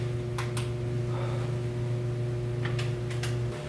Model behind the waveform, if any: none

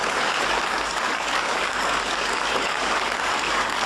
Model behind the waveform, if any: codec, DAC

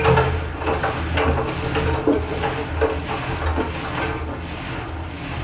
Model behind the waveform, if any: none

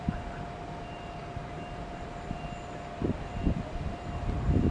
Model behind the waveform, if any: vocoder, BigVGAN v2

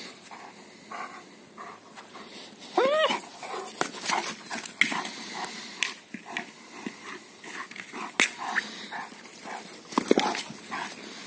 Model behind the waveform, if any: none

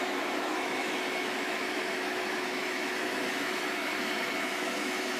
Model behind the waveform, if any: autoencoder, DAC-VAE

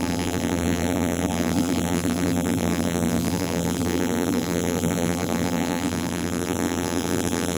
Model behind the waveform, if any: vocoder, BigVGAN v2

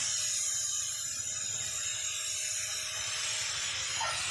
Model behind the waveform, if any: none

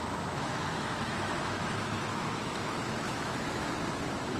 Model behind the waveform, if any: autoencoder, DAC-VAE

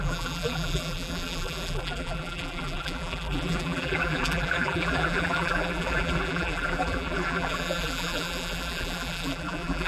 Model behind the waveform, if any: vocoder, BigVGAN v2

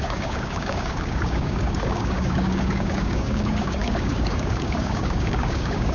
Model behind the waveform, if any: codec, DAC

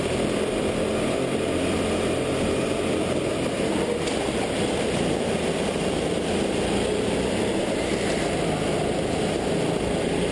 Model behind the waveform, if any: none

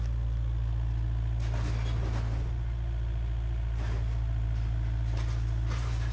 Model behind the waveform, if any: none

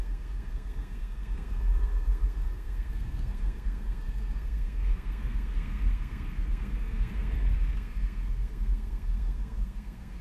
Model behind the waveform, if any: codec, SNAC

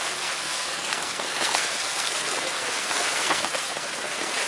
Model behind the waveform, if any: codec, SNAC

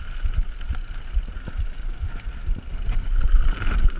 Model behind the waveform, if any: none